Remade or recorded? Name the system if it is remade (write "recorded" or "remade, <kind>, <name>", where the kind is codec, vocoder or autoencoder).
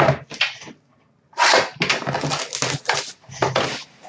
recorded